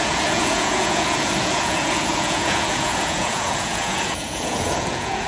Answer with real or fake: fake